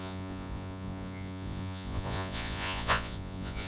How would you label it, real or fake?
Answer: fake